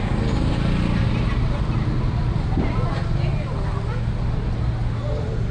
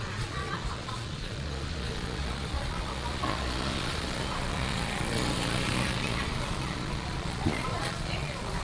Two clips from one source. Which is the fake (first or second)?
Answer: second